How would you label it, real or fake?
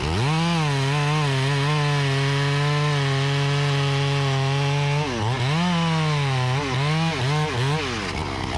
real